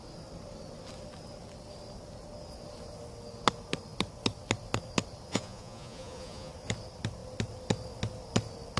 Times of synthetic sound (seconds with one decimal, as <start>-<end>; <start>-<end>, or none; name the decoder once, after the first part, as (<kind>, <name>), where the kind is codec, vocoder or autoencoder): 5.3-6.5 (vocoder, Vocos)